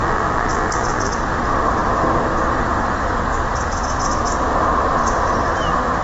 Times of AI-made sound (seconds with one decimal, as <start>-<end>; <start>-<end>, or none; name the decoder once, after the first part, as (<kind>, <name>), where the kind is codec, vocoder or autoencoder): 0.0-1.1 (vocoder, BigVGAN v2)

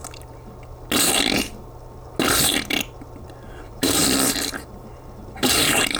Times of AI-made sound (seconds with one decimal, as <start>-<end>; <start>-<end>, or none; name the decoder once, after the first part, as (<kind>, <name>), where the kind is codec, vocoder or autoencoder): 3.6-4.0 (vocoder, BigVGAN v2); 4.6-6.0

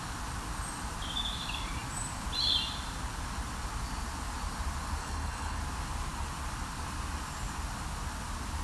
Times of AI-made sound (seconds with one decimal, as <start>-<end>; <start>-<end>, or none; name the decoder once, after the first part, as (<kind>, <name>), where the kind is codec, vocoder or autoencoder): 5.0-5.6 (codec, HILCodec)